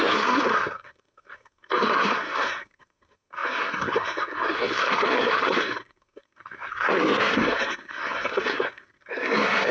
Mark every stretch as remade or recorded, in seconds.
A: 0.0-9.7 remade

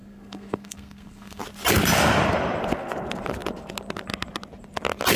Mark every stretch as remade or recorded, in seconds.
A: 0.0-1.4 remade; 1.4-5.2 recorded

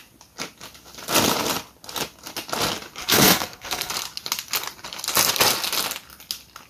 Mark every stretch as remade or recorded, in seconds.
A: 0.0-3.0 recorded; 3.0-3.9 remade; 3.9-6.7 recorded

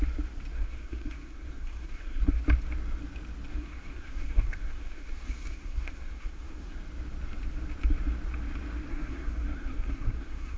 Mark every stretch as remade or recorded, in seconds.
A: 0.0-0.5 recorded; 0.5-2.3 remade; 2.3-3.5 recorded; 3.5-6.8 remade; 6.8-8.9 recorded; 8.9-10.6 remade

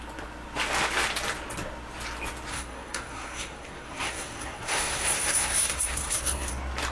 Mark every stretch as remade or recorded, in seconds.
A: 0.0-2.5 recorded; 2.5-6.5 remade; 6.5-6.9 recorded

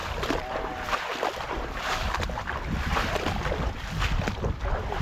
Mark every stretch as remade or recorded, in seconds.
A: 0.0-5.0 recorded